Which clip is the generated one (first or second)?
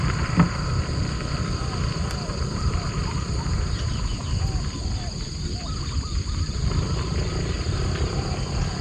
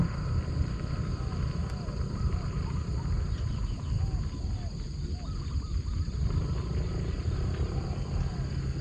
first